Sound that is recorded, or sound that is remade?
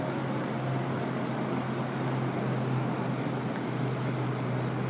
recorded